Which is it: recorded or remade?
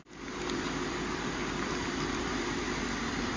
remade